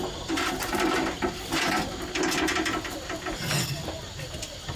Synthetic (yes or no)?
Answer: no